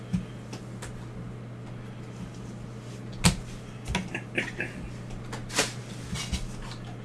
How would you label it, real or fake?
real